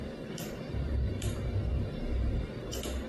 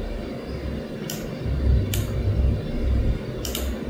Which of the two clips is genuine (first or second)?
second